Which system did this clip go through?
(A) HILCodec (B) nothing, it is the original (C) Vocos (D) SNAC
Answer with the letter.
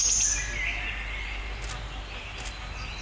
B